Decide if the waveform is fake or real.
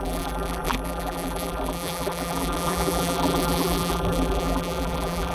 fake